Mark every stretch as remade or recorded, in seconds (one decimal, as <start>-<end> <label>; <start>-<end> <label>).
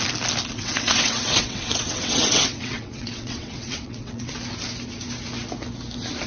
0.0-0.5 recorded; 0.5-4.3 remade; 4.3-6.3 recorded